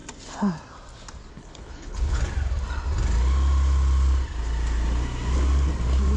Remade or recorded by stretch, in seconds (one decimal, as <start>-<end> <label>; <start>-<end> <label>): 0.0-1.3 recorded; 1.3-2.2 remade; 2.2-6.2 recorded

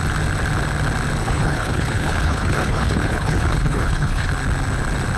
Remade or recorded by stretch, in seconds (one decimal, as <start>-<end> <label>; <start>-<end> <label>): 0.0-1.2 recorded; 1.2-4.3 remade; 4.3-5.2 recorded

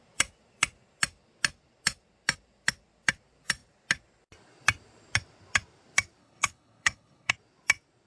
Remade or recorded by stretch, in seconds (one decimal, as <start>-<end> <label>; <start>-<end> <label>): 0.0-6.2 recorded; 6.2-7.3 remade; 7.3-8.1 recorded